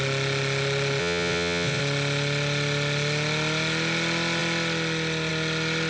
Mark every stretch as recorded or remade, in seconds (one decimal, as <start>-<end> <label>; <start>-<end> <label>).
0.0-1.0 recorded; 1.0-1.8 remade; 1.8-5.9 recorded